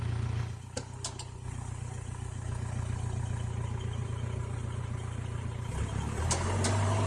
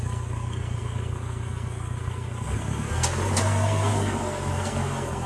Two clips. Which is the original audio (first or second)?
first